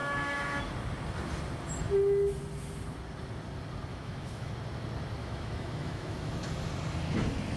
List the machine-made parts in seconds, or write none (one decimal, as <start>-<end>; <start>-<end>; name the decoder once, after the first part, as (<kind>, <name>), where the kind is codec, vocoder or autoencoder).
0.0-0.6 (autoencoder, DAC-VAE); 3.9-4.5; 5.2-6.3